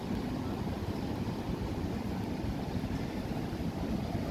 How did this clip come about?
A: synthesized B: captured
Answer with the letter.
A